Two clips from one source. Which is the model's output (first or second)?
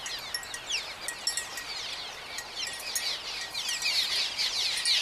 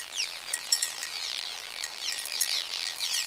second